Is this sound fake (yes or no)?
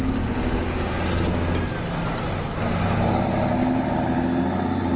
no